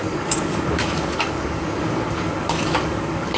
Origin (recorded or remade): remade